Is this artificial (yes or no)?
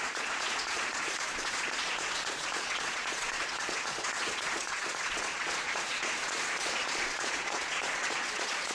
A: yes